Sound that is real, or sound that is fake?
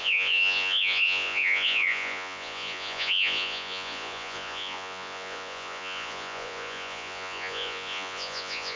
fake